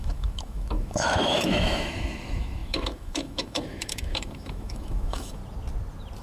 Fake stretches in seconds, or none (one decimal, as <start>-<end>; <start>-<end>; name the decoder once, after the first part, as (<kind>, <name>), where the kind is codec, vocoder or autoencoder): 0.0-5.4 (autoencoder, DAC-VAE)